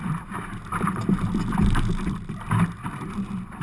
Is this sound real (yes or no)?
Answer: yes